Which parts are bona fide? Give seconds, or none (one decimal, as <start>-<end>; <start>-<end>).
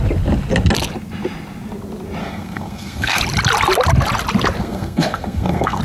0.0-2.2; 3.2-4.6